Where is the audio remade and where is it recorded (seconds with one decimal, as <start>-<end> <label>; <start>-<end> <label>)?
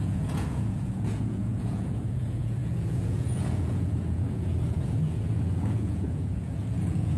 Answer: 0.0-7.2 remade